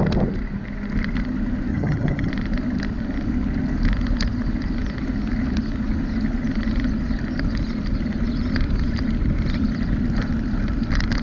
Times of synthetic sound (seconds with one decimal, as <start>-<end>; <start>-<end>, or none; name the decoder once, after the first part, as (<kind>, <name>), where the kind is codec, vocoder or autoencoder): 1.7-2.3 (vocoder, HiFi-GAN)